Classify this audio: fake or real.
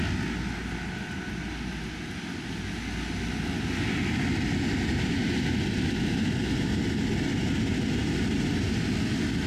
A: real